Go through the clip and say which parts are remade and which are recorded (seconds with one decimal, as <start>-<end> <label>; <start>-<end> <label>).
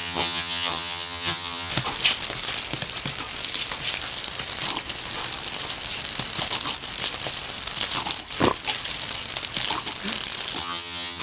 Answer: 0.0-1.7 remade; 1.7-10.6 recorded; 10.6-11.2 remade